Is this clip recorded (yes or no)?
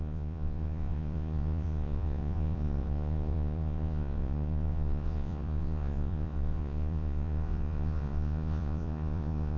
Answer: no